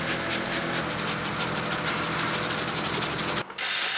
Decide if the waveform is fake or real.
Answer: real